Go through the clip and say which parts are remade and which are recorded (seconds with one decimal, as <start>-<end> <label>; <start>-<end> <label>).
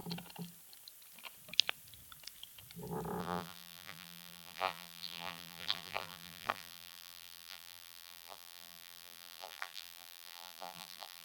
0.0-3.2 recorded; 3.2-11.2 remade